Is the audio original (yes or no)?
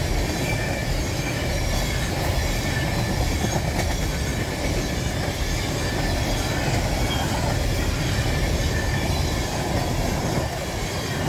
yes